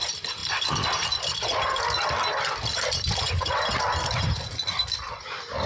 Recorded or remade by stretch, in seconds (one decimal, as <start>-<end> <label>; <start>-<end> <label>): 0.0-5.7 recorded